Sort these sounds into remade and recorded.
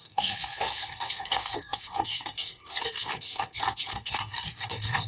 remade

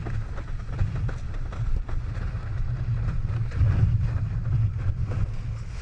recorded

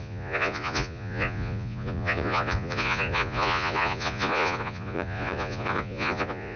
remade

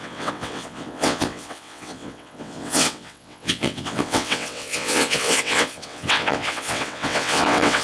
remade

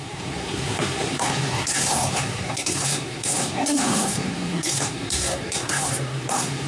remade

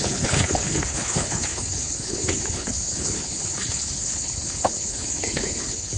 remade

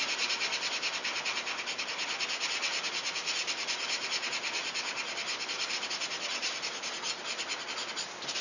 recorded